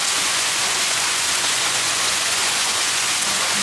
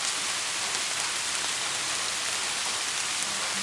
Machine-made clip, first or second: first